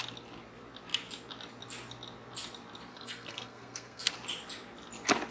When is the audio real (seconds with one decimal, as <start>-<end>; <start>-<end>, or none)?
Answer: 0.0-2.9; 4.1-5.3